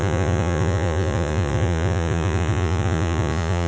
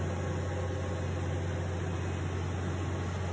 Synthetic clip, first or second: first